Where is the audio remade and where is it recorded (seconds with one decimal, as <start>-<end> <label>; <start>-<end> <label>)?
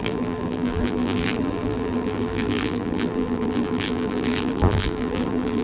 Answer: 0.0-5.6 remade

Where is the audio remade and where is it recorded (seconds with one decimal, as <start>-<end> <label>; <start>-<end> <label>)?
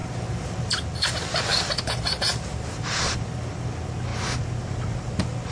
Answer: 0.0-1.5 recorded; 1.5-3.2 remade; 3.2-5.5 recorded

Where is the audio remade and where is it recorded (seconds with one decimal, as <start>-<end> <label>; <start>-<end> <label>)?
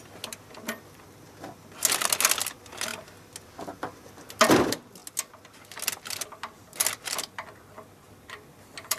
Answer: 0.0-9.0 recorded